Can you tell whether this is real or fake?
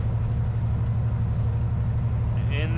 real